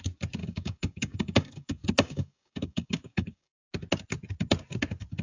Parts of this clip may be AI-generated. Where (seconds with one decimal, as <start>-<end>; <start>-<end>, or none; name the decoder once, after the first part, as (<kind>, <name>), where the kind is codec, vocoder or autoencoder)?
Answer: 0.4-3.5 (codec, DAC)